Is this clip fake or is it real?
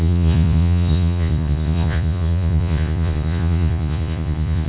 fake